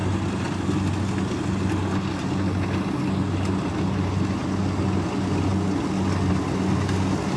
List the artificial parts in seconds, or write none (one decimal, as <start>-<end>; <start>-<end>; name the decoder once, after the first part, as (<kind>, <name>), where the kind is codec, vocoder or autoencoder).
none